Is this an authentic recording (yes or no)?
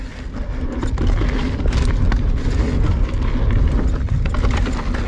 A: yes